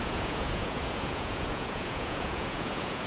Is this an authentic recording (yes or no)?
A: no